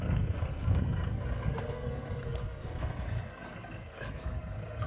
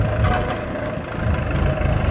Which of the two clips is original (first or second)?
second